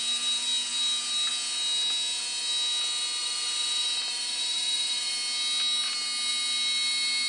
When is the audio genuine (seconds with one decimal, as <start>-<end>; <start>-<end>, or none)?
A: 0.0-3.2; 5.1-7.3